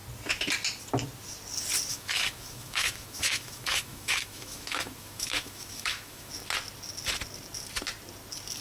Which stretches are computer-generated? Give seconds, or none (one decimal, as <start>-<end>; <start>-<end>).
1.9-6.3